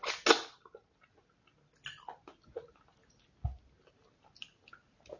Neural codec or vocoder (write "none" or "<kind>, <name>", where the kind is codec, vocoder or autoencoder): none